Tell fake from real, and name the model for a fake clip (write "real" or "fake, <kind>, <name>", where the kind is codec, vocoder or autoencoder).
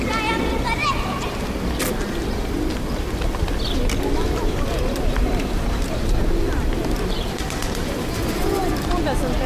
real